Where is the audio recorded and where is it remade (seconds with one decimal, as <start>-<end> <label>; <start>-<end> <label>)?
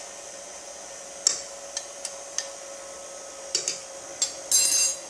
0.0-5.1 recorded